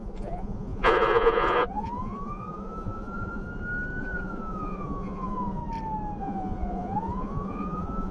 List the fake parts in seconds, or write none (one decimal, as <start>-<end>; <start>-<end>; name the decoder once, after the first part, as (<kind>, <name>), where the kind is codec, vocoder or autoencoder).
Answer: 0.0-3.4 (vocoder, Vocos); 4.0-5.6; 6.2-8.1